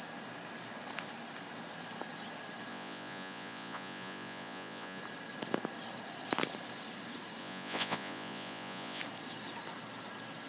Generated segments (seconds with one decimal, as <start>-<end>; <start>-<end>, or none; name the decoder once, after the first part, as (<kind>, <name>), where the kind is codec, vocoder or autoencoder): 2.7-5.0 (vocoder, Vocos); 7.4-9.0

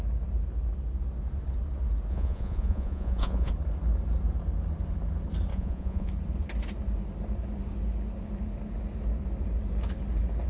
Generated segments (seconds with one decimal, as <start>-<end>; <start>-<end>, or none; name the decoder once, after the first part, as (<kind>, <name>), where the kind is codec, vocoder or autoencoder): 2.1-3.5 (vocoder, Vocos); 5.5-6.1

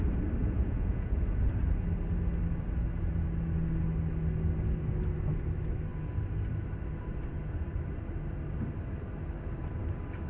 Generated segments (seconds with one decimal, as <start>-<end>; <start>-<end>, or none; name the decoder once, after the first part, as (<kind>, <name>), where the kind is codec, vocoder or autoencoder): 0.4-1.5 (vocoder, Vocos)

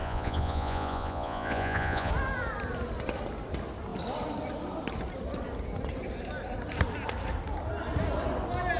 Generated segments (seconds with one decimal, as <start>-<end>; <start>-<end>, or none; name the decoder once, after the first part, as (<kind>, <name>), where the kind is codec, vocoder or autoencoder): 0.0-2.1 (vocoder, Vocos)

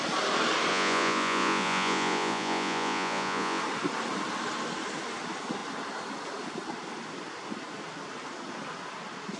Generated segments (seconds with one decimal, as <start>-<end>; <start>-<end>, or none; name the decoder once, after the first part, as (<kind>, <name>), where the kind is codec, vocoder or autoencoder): 0.7-3.6 (vocoder, Vocos)

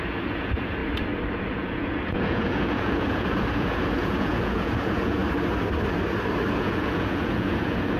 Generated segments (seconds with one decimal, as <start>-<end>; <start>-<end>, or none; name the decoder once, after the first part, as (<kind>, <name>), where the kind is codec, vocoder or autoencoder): 0.0-0.8 (vocoder, Vocos); 1.4-5.2; 6.5-8.0

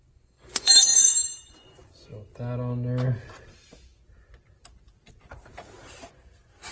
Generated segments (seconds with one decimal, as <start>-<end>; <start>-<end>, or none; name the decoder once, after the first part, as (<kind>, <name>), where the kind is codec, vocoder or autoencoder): 0.0-2.1 (vocoder, Vocos); 6.1-6.7

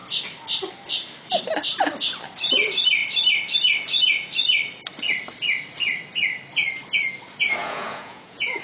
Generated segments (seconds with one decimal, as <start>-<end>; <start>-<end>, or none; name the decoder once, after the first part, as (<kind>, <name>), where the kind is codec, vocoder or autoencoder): 7.6-8.6 (vocoder, Vocos)